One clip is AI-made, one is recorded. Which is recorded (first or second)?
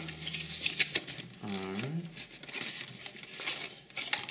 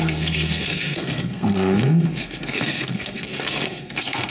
first